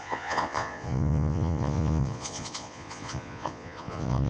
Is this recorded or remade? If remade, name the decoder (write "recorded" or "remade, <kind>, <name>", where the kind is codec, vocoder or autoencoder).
remade, vocoder, Vocos